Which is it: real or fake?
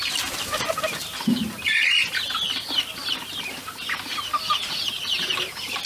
real